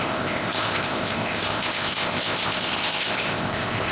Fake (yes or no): yes